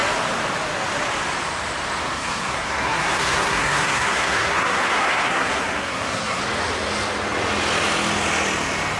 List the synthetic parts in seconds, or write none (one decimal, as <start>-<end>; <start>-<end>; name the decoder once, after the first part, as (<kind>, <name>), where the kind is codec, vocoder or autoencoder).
2.0-6.4 (codec, SNAC)